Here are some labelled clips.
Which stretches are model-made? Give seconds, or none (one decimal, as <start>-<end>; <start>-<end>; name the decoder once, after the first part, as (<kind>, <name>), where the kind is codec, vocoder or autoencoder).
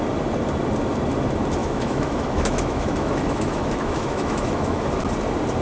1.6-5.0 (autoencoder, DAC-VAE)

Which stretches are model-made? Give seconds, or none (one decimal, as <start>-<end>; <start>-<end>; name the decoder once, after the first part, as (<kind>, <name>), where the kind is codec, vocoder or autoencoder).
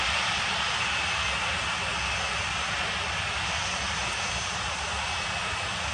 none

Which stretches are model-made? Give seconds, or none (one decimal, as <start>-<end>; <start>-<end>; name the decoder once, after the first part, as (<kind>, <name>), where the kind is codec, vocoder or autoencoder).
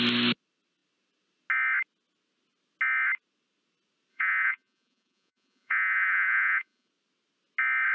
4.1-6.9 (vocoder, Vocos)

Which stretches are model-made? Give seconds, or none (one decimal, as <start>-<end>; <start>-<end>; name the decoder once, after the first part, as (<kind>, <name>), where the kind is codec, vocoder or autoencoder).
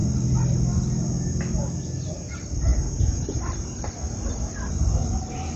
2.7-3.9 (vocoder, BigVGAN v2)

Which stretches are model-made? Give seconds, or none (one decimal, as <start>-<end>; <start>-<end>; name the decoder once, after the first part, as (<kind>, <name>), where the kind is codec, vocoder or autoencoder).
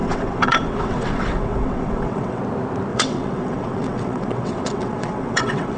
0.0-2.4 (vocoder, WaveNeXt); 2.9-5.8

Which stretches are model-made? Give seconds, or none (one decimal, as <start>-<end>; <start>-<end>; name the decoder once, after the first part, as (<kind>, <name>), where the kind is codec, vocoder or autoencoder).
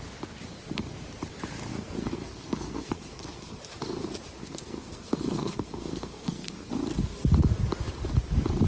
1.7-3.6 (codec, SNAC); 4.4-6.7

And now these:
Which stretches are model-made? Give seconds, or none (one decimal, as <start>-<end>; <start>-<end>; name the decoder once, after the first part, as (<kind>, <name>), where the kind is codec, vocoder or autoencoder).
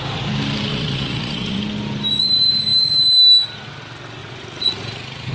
0.7-1.6 (vocoder, Vocos); 4.2-5.3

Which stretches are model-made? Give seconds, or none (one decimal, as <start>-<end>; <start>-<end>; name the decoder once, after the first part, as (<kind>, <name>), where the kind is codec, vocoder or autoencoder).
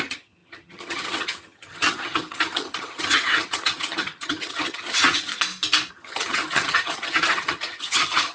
0.0-5.3 (vocoder, HiFi-GAN); 5.9-8.3